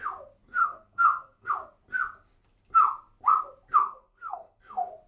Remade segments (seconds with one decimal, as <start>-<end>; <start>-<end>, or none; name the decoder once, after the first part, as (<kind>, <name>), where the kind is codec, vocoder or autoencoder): 0.6-1.5 (codec, SNAC); 3.8-4.6

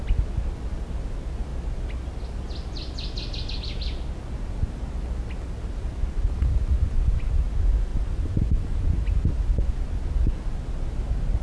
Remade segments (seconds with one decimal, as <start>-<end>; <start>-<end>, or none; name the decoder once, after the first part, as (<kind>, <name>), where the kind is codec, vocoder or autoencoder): none

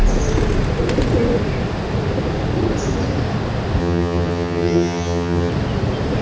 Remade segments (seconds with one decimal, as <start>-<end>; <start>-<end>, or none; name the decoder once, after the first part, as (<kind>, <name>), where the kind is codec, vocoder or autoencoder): 3.8-5.5 (vocoder, HiFi-GAN)

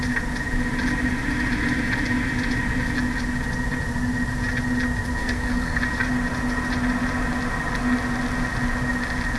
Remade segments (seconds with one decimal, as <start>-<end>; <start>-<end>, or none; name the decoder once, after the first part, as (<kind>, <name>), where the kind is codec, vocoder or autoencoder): 5.2-5.8 (codec, SNAC)

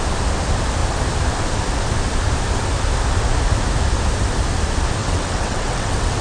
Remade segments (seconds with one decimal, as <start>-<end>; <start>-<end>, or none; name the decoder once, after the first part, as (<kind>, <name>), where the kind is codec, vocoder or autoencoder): 5.0-6.2 (vocoder, WaveNeXt)

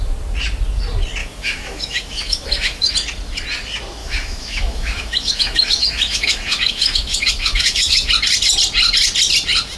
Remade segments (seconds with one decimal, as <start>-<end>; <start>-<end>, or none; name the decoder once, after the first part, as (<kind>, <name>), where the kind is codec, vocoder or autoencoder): 1.2-2.9 (autoencoder, DAC-VAE); 4.0-8.1

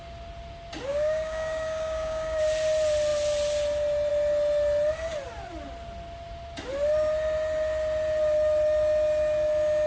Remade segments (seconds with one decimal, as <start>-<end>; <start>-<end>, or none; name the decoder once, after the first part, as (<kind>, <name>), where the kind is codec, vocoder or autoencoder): 0.9-2.4 (codec, DAC)

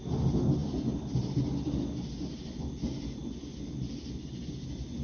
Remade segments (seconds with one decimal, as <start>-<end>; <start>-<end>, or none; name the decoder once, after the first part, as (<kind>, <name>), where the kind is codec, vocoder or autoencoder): none